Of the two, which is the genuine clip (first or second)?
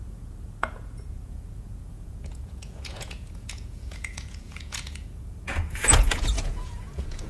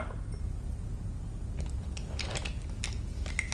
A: second